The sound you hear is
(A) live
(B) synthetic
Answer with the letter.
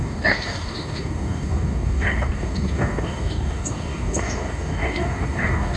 B